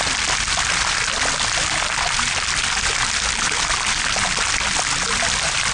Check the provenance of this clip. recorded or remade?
recorded